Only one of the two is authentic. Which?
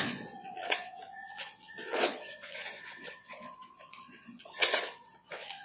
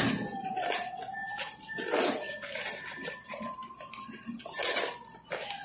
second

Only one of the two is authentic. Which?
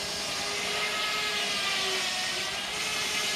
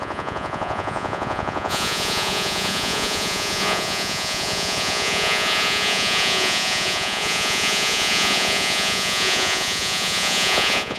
first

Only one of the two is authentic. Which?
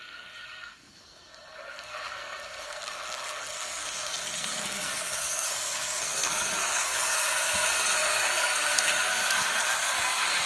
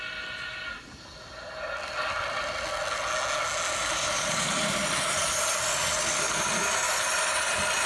second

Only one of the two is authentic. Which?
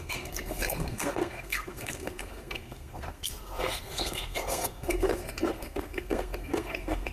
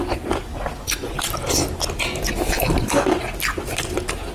second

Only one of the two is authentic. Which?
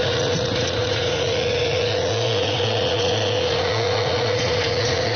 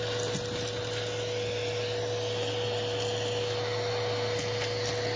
second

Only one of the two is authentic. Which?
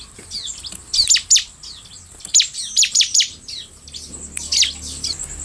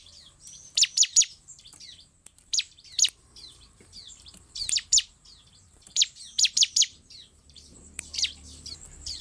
first